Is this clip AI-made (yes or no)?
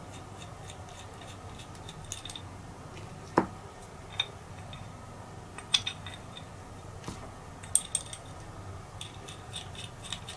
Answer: no